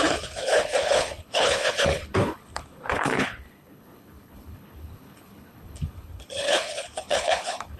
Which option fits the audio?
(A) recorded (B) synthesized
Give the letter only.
B